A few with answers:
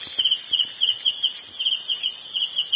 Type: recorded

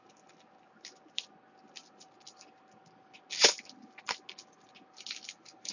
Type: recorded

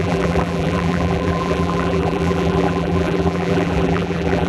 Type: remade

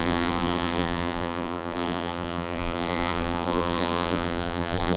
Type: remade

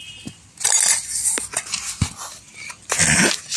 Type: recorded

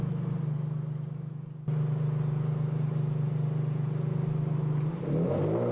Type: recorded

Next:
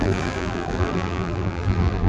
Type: remade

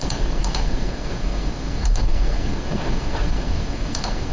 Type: remade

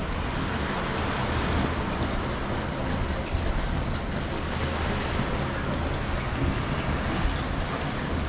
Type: recorded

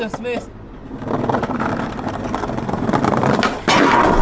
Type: recorded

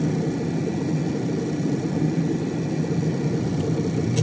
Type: recorded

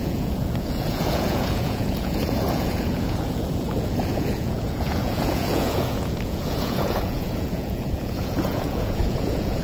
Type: remade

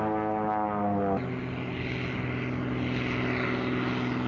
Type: recorded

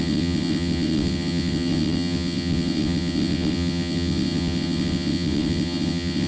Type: remade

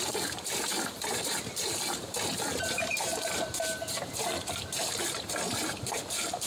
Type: remade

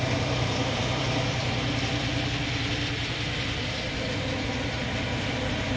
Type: remade